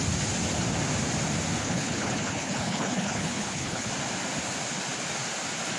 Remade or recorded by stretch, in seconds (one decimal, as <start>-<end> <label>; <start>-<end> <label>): 0.0-1.6 recorded; 1.6-3.9 remade; 3.9-5.8 recorded